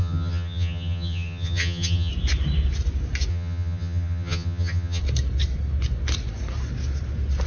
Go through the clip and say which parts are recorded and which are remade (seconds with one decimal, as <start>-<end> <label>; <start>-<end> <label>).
0.0-2.1 remade; 2.1-3.3 recorded; 3.3-5.0 remade; 5.0-7.5 recorded